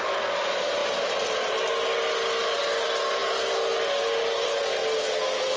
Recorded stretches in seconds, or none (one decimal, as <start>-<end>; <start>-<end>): 0.0-5.6